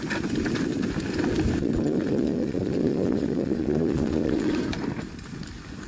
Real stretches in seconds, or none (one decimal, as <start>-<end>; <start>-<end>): 0.0-1.6; 4.5-5.9